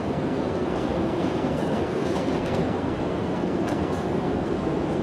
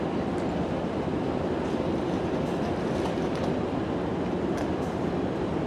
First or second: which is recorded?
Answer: second